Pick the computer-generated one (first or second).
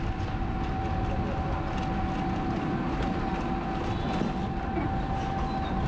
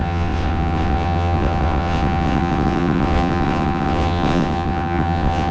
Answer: second